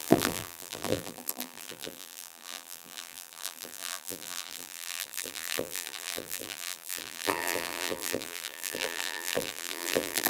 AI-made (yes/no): yes